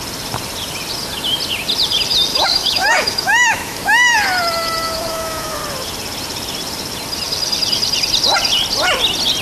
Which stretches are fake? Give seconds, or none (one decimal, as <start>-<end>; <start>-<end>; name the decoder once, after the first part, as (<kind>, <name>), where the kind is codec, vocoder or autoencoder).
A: 2.3-5.6 (autoencoder, DAC-VAE)